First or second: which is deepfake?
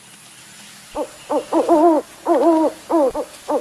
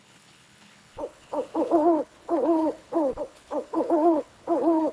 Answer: second